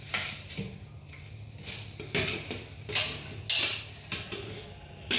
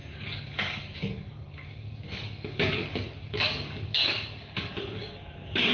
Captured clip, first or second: first